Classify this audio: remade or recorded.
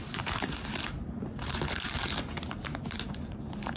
remade